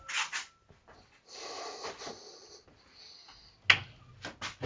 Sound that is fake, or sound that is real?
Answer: real